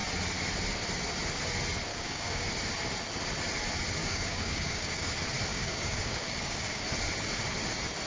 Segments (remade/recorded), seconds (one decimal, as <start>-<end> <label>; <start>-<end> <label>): 0.0-1.9 recorded; 1.9-2.5 remade; 2.5-4.0 recorded; 4.0-5.1 remade; 5.1-5.5 recorded; 5.5-6.8 remade; 6.8-8.1 recorded